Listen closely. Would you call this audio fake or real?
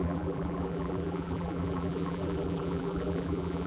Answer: fake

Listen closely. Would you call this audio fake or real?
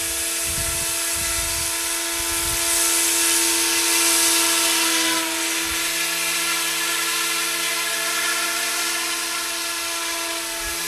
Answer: real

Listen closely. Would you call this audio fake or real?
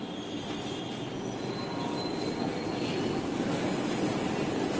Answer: real